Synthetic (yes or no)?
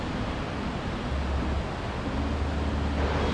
no